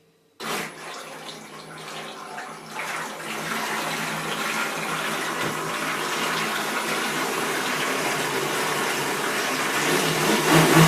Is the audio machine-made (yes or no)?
no